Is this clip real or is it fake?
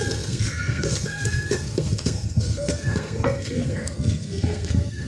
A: fake